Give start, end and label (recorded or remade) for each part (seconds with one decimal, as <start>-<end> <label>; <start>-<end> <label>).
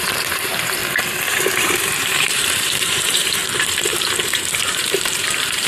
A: 0.0-0.8 remade; 0.8-1.3 recorded; 1.3-3.4 remade; 3.4-3.9 recorded; 3.9-5.7 remade